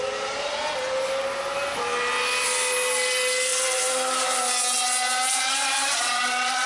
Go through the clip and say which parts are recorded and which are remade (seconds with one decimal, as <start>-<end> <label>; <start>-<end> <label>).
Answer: 0.0-3.5 recorded; 3.5-6.0 remade; 6.0-6.7 recorded